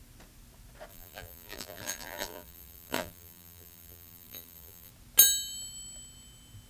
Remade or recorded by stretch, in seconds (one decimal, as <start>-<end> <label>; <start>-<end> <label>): 0.0-0.9 recorded; 0.9-4.9 remade; 4.9-6.7 recorded